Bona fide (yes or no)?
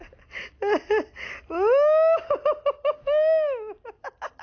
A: yes